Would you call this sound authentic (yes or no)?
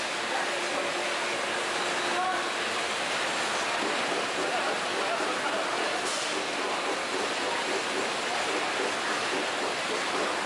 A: yes